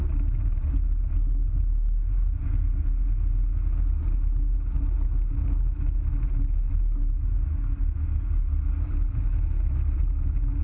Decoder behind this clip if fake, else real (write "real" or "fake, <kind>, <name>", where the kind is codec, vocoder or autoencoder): real